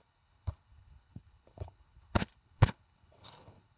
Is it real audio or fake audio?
fake